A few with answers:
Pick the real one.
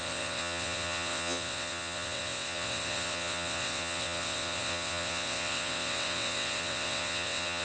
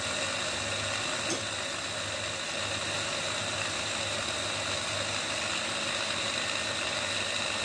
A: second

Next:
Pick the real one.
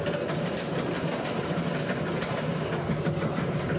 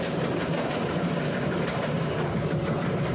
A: first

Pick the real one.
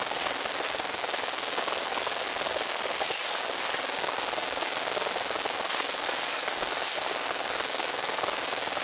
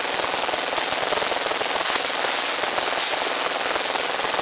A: second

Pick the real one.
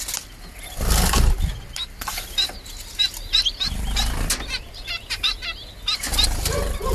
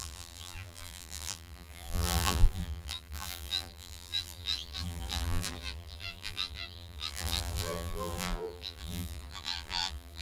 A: first